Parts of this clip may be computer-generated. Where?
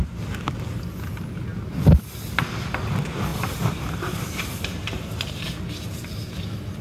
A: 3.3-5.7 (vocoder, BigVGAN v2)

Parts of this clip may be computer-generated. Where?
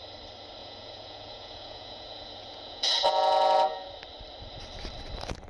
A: 0.6-3.9 (vocoder, Vocos)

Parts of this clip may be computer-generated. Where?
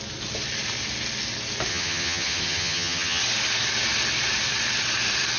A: 1.7-3.2 (vocoder, HiFi-GAN)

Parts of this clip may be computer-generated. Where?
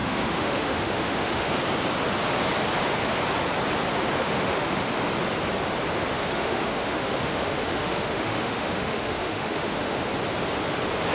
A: 0.0-1.6 (autoencoder, DAC-VAE); 4.2-4.9; 6.1-10.1